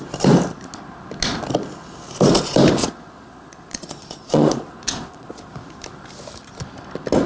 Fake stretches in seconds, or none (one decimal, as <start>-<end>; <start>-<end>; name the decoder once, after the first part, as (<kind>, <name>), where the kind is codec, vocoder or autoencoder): 2.8-5.4 (vocoder, Vocos)